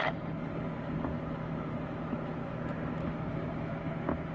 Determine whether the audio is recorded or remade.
recorded